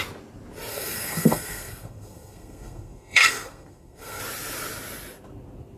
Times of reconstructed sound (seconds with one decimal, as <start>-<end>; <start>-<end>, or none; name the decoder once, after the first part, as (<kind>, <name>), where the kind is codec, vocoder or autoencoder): 0.7-4.2 (codec, SNAC)